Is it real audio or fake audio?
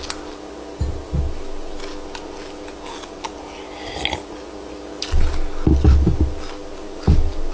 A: real